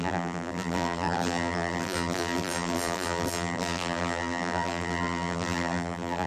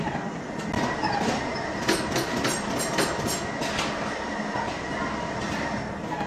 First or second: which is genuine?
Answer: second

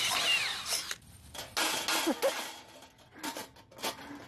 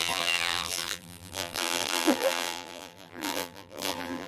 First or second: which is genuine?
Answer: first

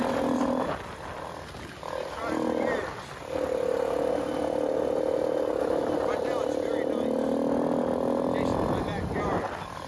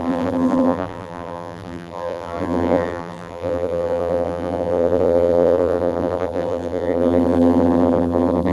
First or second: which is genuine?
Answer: first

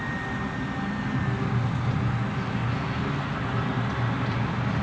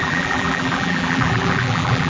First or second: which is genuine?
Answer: first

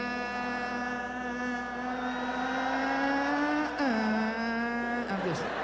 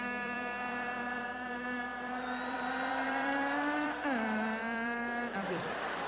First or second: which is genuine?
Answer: first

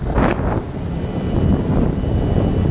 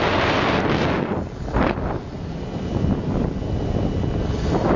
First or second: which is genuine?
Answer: first